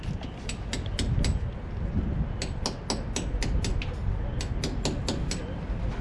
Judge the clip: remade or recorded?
recorded